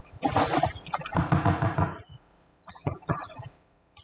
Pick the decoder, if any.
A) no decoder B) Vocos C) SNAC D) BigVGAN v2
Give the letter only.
B